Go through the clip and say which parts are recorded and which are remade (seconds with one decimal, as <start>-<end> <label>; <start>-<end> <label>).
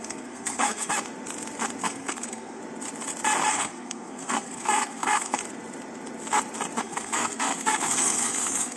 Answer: 0.0-0.9 remade; 0.9-1.8 recorded; 1.8-2.6 remade; 2.6-3.5 recorded; 3.5-5.4 remade; 5.4-6.8 recorded; 6.8-8.8 remade